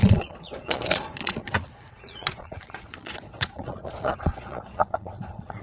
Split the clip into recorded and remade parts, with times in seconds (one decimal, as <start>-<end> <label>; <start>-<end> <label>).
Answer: 0.0-5.6 remade